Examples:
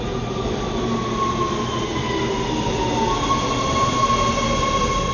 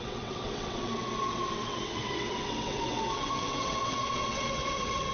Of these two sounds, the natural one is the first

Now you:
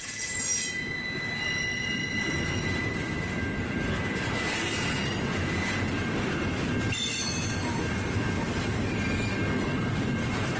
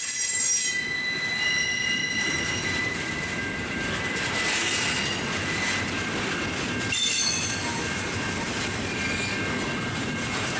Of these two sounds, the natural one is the first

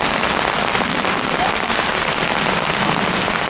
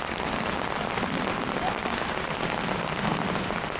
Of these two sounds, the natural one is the first